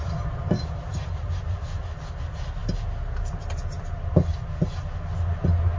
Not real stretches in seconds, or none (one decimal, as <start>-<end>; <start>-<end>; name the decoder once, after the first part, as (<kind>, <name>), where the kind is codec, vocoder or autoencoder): none